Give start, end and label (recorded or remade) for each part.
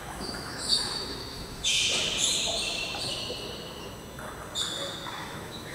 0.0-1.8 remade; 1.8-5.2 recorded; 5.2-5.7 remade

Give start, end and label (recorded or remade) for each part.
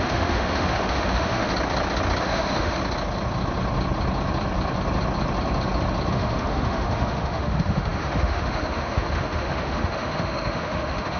0.0-1.5 remade; 1.5-2.2 recorded; 2.2-2.8 remade; 2.8-6.1 recorded; 6.1-11.2 remade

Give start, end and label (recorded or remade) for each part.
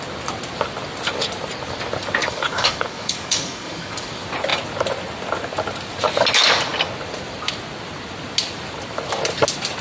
0.0-2.2 recorded; 2.2-4.1 remade; 4.1-9.8 recorded